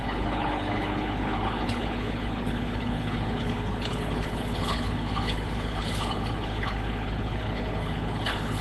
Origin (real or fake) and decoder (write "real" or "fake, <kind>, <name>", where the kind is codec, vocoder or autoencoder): fake, codec, HILCodec